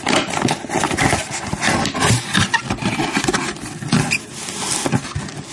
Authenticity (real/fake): real